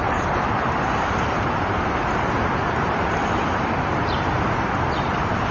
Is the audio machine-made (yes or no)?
yes